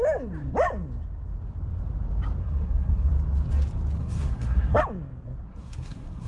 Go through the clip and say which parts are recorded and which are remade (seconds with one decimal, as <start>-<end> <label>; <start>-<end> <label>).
0.0-2.4 recorded; 2.4-3.1 remade; 3.1-4.0 recorded; 4.0-4.8 remade; 4.8-5.5 recorded; 5.5-6.3 remade